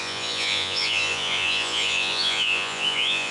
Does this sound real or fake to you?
fake